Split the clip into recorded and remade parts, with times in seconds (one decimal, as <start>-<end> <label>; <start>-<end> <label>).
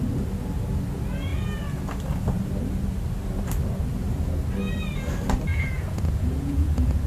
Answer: 0.0-5.5 recorded; 5.5-7.1 remade